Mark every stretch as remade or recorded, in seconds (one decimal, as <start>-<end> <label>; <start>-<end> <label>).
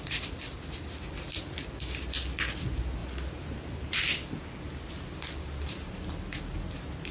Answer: 0.0-3.0 recorded; 3.0-4.1 remade; 4.1-7.1 recorded